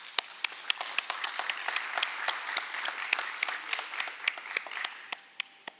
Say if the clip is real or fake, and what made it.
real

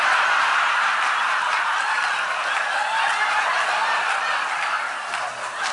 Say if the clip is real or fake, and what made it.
real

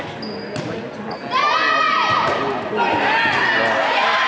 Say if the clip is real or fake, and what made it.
real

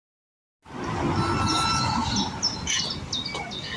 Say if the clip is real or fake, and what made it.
real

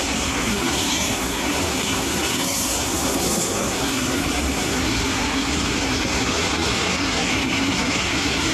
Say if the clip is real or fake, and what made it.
fake, codec, SNAC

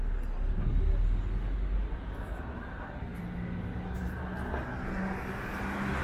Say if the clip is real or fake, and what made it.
real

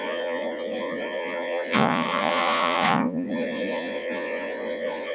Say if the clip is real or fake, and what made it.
fake, vocoder, Vocos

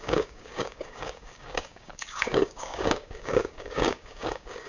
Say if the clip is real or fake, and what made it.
fake, codec, DAC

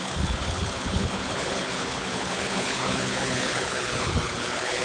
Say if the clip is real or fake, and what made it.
fake, codec, HILCodec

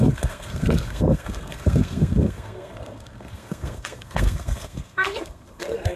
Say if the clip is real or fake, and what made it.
fake, codec, SNAC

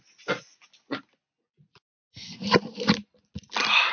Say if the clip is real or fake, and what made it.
real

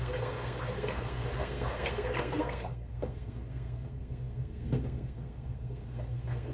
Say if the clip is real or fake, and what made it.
fake, codec, SNAC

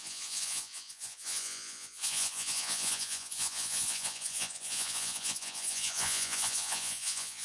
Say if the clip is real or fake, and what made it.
fake, vocoder, Vocos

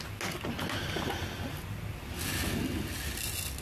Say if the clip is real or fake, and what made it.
real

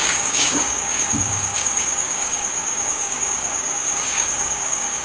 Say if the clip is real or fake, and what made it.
fake, codec, DAC